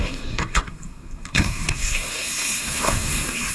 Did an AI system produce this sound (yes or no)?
yes